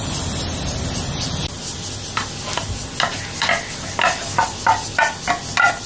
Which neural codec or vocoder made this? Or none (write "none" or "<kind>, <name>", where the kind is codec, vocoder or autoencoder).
none